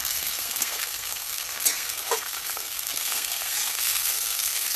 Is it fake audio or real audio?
fake